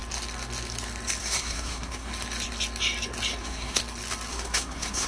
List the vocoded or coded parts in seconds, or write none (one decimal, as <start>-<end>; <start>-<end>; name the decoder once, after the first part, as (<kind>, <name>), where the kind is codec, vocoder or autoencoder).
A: 1.2-2.1 (codec, SNAC); 3.4-3.8; 4.3-5.1